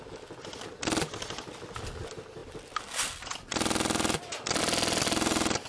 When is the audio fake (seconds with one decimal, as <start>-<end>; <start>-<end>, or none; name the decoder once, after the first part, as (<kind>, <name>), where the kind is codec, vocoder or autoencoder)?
none